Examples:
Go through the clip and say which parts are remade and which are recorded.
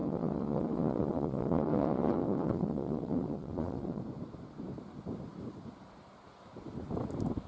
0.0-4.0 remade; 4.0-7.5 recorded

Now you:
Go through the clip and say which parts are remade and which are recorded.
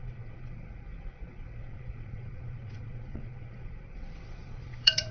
0.0-5.1 remade